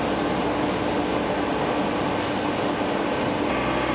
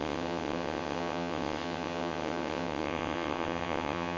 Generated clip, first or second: second